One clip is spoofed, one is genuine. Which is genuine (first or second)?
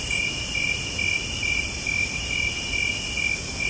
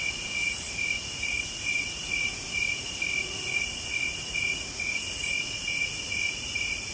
first